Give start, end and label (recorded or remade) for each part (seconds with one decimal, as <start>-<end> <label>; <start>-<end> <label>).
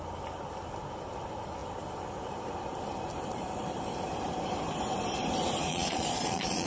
0.0-5.7 recorded; 5.7-6.7 remade